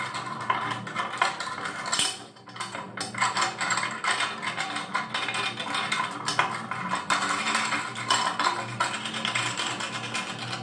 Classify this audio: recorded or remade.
recorded